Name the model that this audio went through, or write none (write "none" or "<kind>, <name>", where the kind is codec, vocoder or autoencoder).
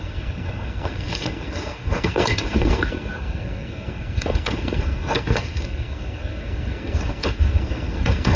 codec, SNAC